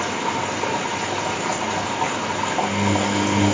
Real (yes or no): yes